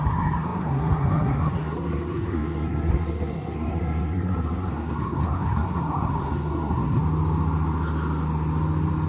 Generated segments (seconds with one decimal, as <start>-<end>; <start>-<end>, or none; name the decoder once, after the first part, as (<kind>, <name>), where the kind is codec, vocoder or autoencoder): 0.0-7.0 (codec, SNAC)